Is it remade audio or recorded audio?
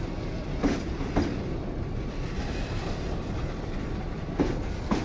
remade